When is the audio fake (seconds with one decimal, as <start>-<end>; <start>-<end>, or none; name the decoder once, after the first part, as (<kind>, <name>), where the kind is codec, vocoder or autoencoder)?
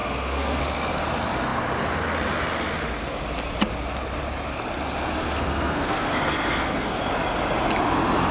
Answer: 0.0-0.6 (codec, SNAC); 5.2-7.0